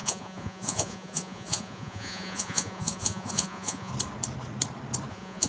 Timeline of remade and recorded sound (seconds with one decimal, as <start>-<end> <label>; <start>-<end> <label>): 0.0-3.9 remade; 3.9-5.1 recorded; 5.1-5.5 remade